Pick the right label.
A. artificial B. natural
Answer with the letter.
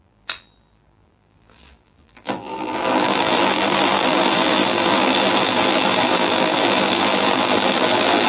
A